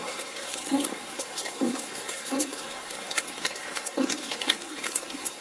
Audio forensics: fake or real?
fake